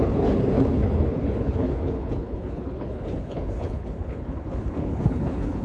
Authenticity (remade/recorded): remade